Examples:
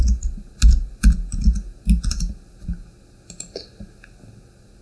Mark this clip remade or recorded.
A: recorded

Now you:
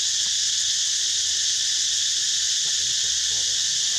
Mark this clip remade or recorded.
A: recorded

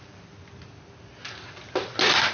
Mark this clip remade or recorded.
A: recorded